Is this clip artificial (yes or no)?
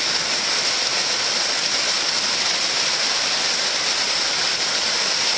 no